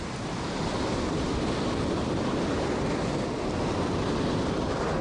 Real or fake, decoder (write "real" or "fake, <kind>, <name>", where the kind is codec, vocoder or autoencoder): real